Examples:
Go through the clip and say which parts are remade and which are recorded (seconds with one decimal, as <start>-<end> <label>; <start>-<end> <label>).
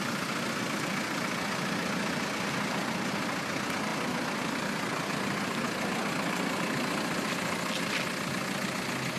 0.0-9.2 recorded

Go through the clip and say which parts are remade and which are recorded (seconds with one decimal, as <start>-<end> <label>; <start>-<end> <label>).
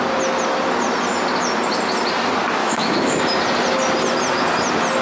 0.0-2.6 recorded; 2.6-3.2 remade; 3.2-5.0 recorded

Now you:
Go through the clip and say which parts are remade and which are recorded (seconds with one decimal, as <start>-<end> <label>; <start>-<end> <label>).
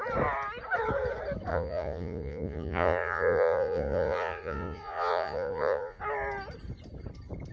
0.0-1.5 recorded; 1.5-6.0 remade; 6.0-7.5 recorded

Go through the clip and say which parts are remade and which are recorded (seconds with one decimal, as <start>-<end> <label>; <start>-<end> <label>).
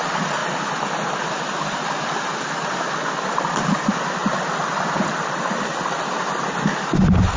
0.0-7.4 recorded